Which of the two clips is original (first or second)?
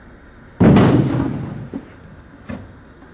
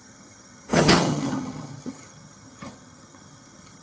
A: first